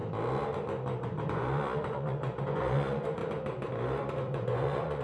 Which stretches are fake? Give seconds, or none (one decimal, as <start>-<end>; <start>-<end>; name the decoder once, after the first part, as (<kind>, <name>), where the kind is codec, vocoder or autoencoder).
1.0-3.2 (vocoder, Vocos); 4.1-5.0